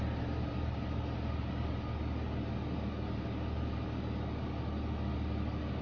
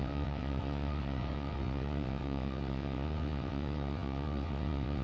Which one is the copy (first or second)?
second